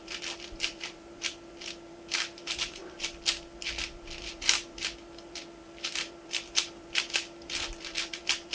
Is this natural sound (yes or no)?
no